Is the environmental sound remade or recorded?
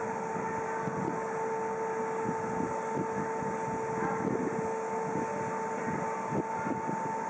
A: recorded